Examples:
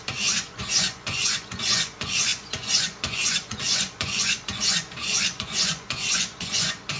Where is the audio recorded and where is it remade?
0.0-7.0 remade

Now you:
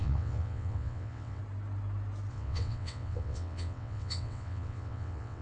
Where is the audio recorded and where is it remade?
0.0-1.4 remade; 1.4-2.3 recorded; 2.3-5.4 remade

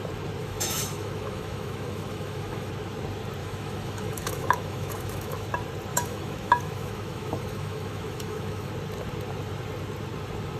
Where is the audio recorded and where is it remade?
0.0-0.4 recorded; 0.4-2.7 remade; 2.7-3.4 recorded; 3.4-5.5 remade; 5.5-5.9 recorded; 5.9-8.7 remade; 8.7-10.6 recorded

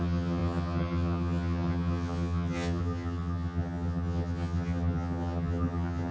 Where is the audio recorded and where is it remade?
0.0-6.1 remade

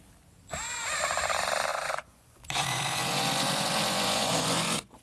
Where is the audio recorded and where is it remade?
0.0-1.7 recorded; 1.7-5.0 remade

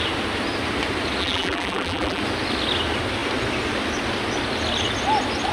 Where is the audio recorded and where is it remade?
0.0-1.2 recorded; 1.2-2.2 remade; 2.2-5.5 recorded

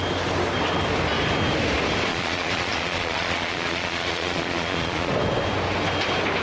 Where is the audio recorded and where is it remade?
0.0-2.1 recorded; 2.1-5.1 remade; 5.1-6.4 recorded